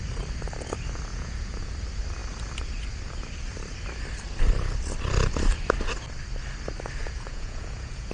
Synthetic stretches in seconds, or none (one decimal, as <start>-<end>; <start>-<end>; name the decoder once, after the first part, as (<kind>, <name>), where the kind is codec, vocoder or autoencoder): 1.1-1.7 (vocoder, Vocos); 7.0-8.1